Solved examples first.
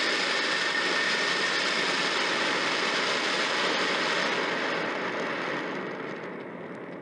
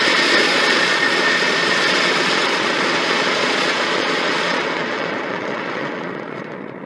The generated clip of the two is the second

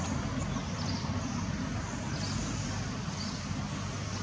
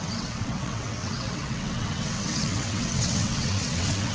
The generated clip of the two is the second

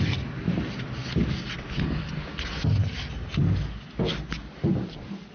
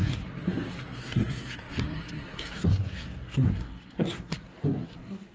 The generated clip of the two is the second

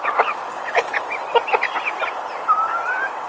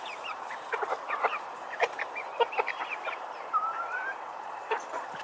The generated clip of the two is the second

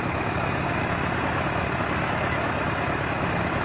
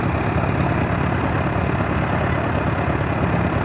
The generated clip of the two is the first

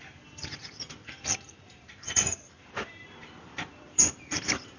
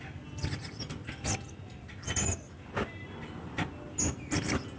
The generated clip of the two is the first